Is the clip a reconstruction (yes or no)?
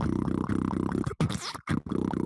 no